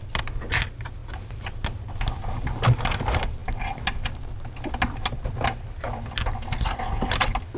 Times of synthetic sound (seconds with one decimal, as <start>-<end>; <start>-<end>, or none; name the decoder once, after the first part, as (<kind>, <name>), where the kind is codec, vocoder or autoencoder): none